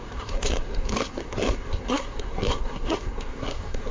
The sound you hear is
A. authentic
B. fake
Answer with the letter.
B